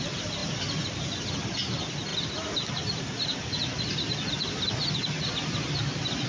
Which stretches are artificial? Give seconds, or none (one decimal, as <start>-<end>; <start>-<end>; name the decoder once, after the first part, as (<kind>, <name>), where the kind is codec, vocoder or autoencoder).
none